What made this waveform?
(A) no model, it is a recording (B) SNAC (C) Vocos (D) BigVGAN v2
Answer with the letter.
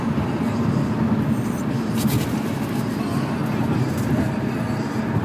A